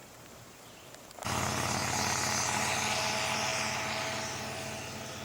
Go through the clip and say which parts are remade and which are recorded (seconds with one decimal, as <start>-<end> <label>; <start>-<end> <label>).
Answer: 0.0-1.2 remade; 1.2-5.2 recorded